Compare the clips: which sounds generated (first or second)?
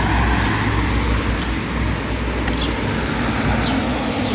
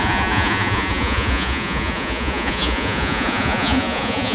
second